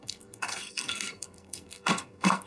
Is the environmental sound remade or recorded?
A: remade